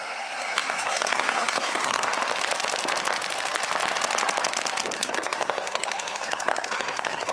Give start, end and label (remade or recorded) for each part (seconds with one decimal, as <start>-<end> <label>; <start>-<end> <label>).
0.0-2.1 remade; 2.1-5.0 recorded; 5.0-7.3 remade